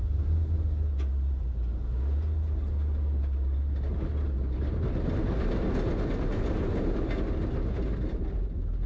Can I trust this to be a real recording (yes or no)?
yes